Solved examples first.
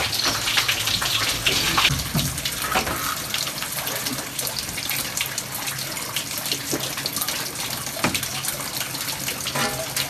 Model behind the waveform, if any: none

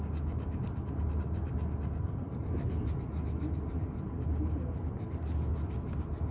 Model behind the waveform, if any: none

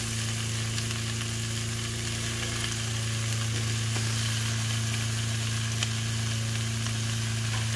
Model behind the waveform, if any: none